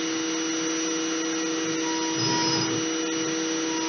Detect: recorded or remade recorded